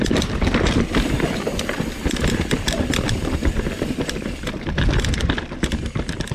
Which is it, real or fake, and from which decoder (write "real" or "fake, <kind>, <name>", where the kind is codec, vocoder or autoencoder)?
fake, vocoder, BigVGAN v2